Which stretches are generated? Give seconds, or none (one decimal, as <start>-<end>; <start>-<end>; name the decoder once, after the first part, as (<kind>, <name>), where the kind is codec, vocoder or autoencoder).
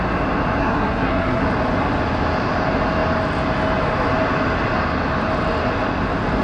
0.6-1.4 (codec, SNAC)